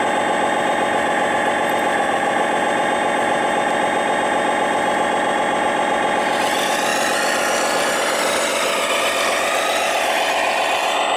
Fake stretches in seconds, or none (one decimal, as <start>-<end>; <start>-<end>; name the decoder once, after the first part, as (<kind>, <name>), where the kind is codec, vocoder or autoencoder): none